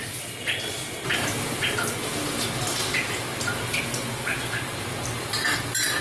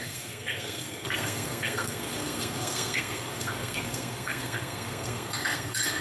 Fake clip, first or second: second